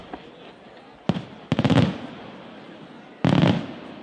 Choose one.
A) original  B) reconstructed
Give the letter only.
A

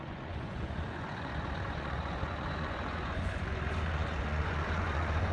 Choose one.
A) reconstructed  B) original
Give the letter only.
A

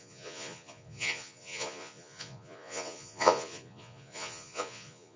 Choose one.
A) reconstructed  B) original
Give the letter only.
A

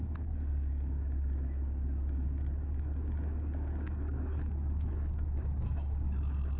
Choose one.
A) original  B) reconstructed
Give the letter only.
A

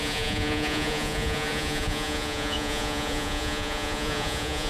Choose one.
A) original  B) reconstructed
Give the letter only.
B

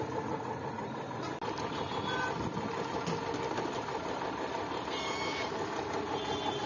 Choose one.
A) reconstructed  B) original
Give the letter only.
B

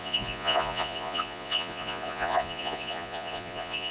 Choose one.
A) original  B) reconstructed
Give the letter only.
B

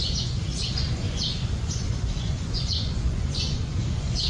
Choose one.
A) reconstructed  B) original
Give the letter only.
A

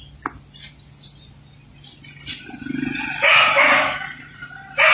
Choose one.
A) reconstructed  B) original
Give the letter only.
B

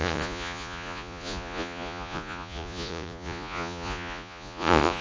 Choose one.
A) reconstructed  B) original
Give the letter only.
A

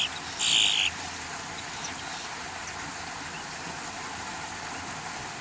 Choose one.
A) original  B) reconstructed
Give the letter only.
A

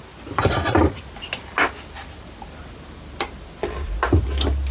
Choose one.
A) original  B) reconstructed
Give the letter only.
A